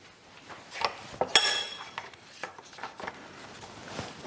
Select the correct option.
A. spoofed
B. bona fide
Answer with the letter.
B